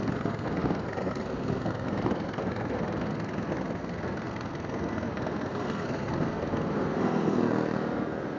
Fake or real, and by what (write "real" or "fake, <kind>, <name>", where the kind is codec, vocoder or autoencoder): fake, codec, SNAC